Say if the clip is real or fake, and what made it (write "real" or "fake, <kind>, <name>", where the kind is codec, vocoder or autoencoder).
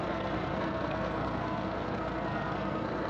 fake, codec, SNAC